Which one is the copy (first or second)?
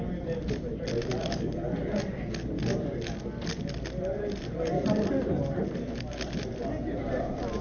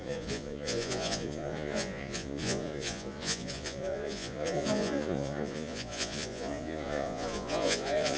second